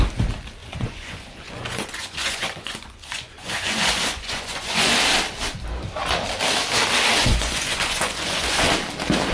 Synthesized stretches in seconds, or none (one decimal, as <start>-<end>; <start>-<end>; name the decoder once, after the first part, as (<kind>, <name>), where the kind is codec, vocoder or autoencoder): 0.6-4.9 (vocoder, Vocos); 7.2-8.7